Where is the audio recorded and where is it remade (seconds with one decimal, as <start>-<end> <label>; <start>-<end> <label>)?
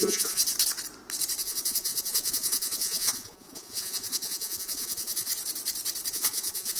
0.0-0.4 remade; 0.4-1.4 recorded; 1.4-5.3 remade; 5.3-6.1 recorded; 6.1-6.8 remade